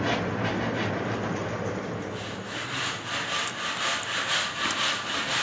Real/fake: real